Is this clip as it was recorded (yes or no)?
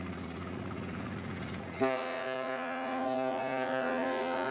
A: no